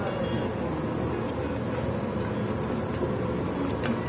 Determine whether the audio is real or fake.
real